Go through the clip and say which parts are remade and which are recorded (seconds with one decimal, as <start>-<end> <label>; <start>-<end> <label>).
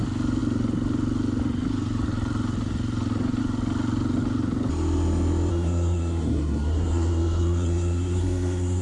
0.0-5.5 recorded; 5.5-8.8 remade